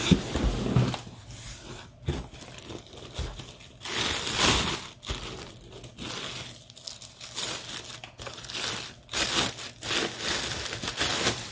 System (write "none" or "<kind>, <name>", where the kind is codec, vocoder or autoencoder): none